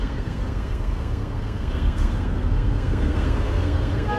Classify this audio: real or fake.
fake